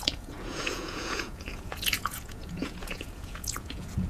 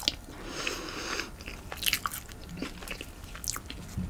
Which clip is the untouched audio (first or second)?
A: second